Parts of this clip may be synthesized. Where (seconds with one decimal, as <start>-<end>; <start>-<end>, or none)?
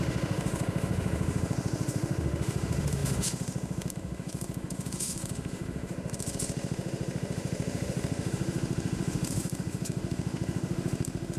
0.0-11.4